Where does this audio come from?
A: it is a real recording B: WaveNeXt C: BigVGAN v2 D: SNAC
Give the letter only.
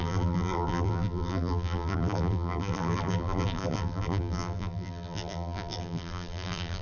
C